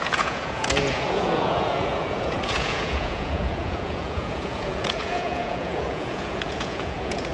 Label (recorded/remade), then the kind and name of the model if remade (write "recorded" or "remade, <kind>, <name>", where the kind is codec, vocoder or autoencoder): remade, vocoder, Vocos